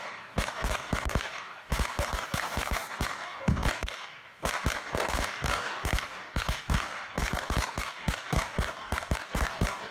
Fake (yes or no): yes